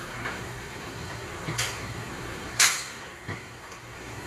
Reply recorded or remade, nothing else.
remade